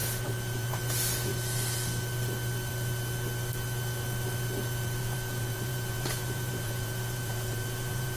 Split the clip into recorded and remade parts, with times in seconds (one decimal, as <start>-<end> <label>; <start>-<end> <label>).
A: 0.0-0.8 remade; 0.8-5.0 recorded; 5.0-8.2 remade